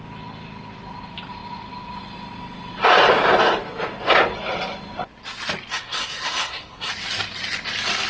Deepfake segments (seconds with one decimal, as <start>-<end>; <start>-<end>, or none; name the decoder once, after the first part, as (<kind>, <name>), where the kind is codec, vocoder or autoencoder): 5.7-6.9 (codec, SNAC)